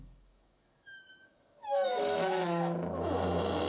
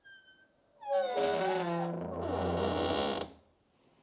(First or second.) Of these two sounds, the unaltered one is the second